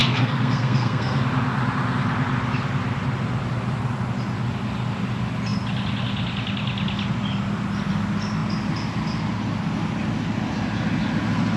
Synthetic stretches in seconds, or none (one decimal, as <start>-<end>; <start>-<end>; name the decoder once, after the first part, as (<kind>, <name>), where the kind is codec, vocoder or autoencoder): 0.0-1.2 (codec, SNAC)